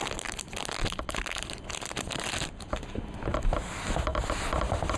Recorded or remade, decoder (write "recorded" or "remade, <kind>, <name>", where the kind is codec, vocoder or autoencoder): recorded